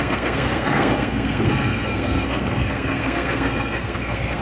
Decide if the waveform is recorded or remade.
remade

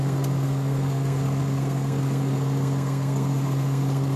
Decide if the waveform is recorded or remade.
remade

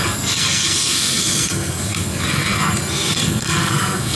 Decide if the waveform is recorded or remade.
remade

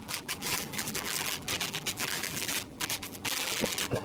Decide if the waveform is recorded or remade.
remade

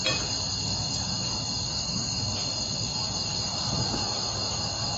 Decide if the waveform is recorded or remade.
recorded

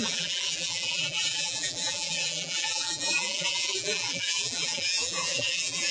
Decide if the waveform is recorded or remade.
remade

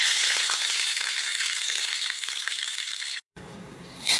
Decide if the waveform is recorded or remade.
remade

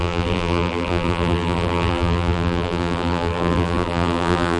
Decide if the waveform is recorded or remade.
remade